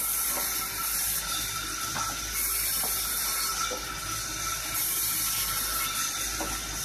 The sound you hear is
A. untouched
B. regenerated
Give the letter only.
A